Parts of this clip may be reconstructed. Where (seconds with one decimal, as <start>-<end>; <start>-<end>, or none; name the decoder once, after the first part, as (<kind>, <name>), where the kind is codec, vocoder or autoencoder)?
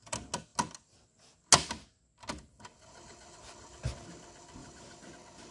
4.6-5.1 (vocoder, BigVGAN v2)